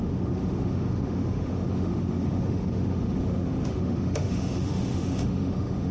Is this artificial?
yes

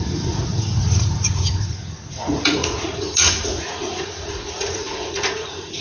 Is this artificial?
yes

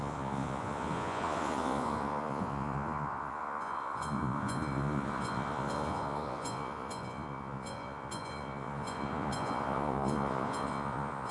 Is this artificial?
yes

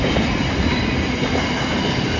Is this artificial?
yes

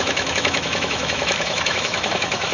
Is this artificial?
yes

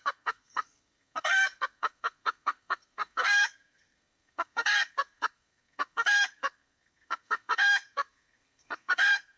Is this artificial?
yes